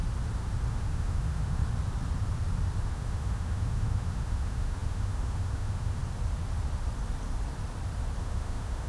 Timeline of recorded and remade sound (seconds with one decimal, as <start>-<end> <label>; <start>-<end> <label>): 0.0-0.7 recorded; 0.7-1.6 remade; 1.6-2.8 recorded; 2.8-6.0 remade; 6.0-8.2 recorded; 8.2-8.9 remade